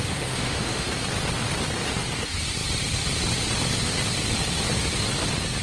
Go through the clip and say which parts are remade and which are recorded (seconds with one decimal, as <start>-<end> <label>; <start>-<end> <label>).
0.0-0.9 remade; 0.9-5.6 recorded